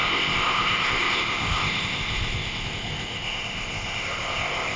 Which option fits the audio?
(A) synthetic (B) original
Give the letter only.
A